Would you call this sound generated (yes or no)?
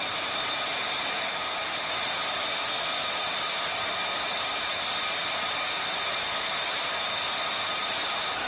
no